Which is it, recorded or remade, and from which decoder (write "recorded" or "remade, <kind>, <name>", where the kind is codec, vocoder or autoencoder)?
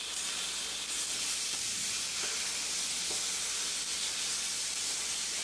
recorded